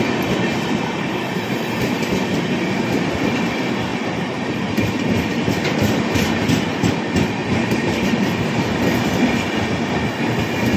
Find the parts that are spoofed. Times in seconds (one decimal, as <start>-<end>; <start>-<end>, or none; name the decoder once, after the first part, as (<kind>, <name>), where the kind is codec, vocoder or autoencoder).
0.5-2.0 (vocoder, BigVGAN v2); 3.9-6.9; 7.4-8.2